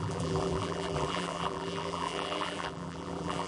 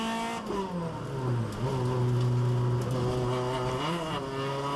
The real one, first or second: second